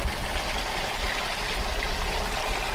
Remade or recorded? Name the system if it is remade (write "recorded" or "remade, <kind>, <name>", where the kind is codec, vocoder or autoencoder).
recorded